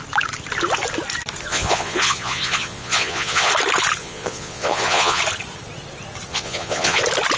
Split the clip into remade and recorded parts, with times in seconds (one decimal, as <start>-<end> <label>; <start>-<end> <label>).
0.0-1.5 recorded; 1.5-3.5 remade; 3.5-4.0 recorded; 4.0-5.2 remade; 5.2-6.3 recorded; 6.3-7.0 remade; 7.0-7.4 recorded